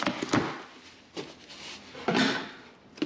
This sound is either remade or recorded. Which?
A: recorded